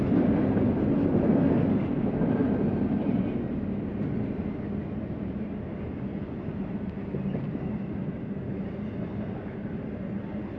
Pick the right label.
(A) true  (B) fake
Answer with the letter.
A